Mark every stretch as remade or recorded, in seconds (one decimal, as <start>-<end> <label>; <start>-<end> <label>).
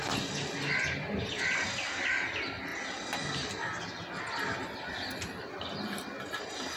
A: 0.0-6.8 recorded